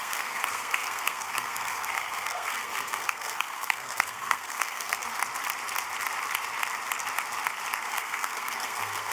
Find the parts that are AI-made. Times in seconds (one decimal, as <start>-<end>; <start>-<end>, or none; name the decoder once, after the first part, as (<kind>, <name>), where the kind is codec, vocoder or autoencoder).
0.0-5.0 (codec, SNAC); 7.9-9.1